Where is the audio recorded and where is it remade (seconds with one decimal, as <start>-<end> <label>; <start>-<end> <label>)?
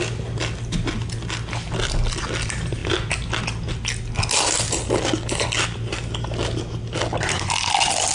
0.0-8.1 recorded